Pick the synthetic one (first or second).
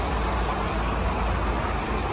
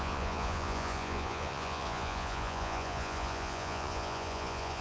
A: second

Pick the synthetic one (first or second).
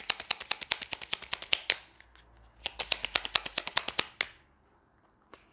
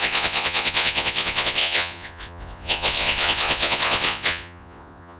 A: second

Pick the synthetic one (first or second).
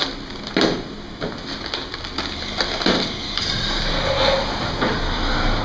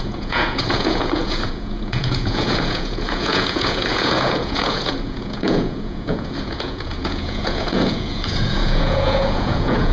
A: second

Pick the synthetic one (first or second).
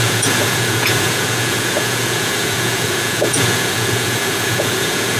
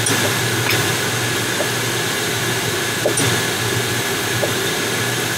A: first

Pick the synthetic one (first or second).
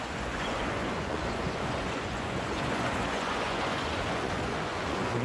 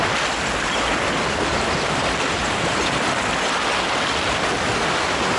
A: first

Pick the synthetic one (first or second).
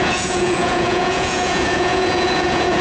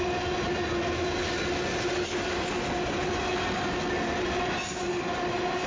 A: first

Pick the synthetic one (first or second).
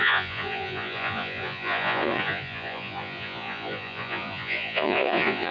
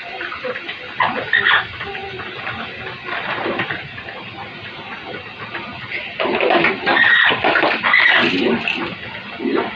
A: first